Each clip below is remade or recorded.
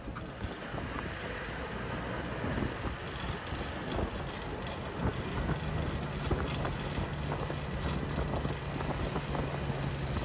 recorded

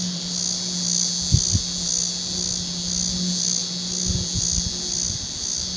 recorded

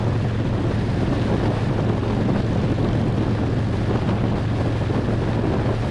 recorded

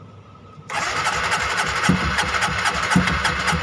recorded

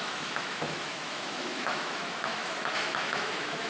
remade